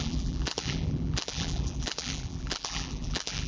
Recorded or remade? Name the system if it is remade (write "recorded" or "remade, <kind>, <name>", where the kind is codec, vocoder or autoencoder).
remade, vocoder, BigVGAN v2